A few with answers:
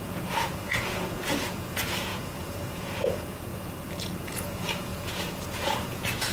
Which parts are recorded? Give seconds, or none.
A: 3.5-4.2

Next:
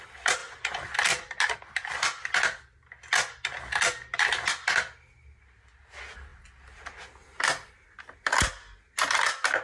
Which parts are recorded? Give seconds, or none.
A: 0.0-9.6

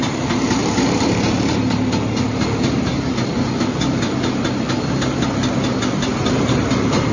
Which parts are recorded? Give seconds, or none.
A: 2.9-6.0

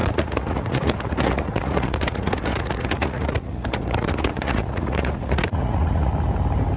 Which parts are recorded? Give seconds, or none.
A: 6.1-6.8

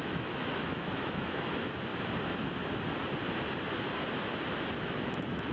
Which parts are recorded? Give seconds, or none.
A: 1.9-4.8

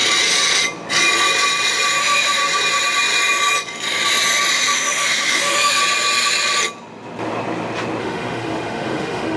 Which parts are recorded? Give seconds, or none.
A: 0.0-2.0; 2.4-4.5; 5.8-8.0

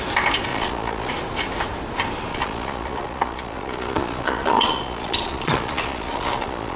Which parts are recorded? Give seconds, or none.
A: 0.0-0.5; 1.1-2.3